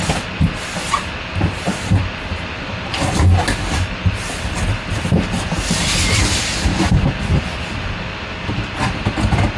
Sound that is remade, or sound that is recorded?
recorded